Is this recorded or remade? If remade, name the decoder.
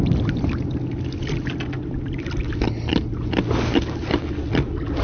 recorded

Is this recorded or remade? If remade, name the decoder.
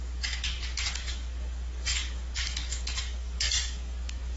remade, codec, DAC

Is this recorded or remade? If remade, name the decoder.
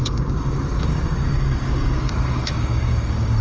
remade, codec, DAC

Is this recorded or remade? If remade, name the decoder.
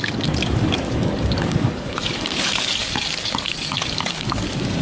remade, codec, DAC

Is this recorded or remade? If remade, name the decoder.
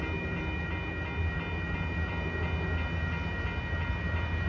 recorded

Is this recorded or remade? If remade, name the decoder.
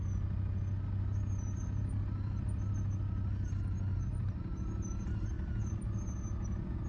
recorded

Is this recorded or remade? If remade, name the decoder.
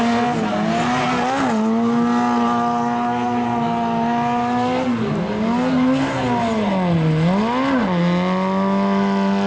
recorded